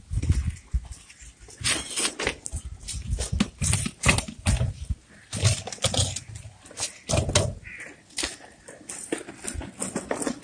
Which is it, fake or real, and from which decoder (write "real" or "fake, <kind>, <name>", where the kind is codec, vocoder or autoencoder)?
real